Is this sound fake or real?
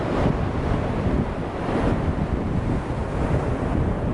real